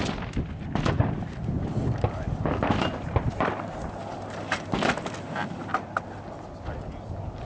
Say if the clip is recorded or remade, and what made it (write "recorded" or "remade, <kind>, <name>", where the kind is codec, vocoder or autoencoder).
recorded